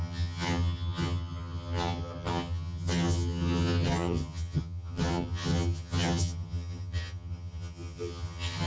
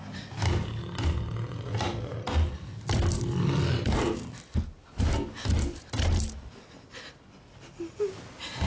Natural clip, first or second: second